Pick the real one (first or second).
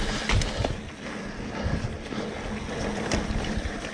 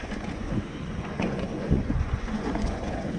first